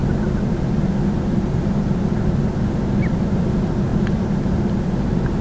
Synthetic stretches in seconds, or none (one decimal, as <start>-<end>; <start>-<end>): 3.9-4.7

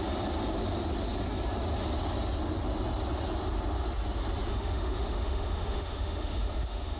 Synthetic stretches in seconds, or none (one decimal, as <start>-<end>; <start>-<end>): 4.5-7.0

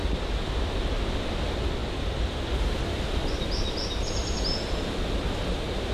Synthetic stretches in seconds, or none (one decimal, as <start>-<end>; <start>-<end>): none